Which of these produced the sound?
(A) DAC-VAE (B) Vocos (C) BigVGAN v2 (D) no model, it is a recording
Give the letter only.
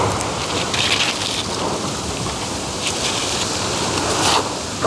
C